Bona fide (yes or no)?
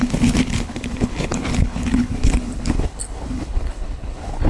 no